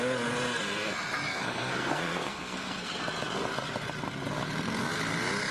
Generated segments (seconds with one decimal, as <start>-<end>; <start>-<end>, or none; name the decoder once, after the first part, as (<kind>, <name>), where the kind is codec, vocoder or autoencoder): 1.3-3.0 (codec, SNAC)